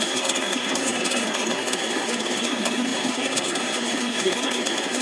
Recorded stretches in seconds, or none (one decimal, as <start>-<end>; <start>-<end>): none